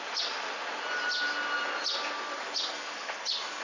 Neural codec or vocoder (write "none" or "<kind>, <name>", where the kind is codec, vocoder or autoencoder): none